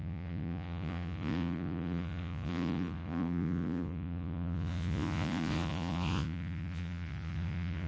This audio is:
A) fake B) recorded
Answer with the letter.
A